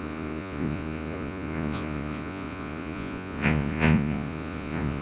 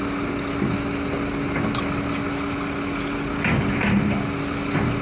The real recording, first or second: second